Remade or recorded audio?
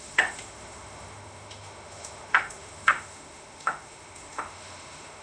remade